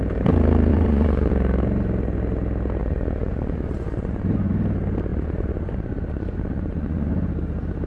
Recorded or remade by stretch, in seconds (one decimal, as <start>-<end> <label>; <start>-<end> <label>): 0.0-0.7 recorded; 0.7-1.3 remade; 1.3-2.8 recorded; 2.8-4.5 remade; 4.5-5.1 recorded; 5.1-7.1 remade; 7.1-7.9 recorded